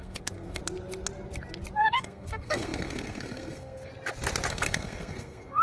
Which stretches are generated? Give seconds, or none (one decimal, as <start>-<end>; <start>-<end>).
0.0-0.6; 1.8-3.9; 4.5-5.6